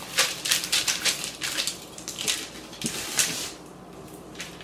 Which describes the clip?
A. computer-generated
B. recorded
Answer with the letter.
B